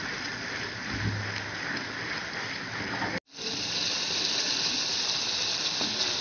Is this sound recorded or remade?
recorded